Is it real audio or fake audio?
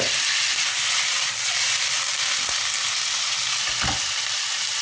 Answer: real